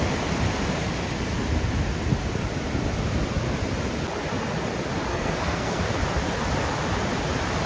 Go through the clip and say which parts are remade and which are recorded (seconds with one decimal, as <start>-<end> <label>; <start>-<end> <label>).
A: 0.0-5.1 recorded; 5.1-5.8 remade; 5.8-7.7 recorded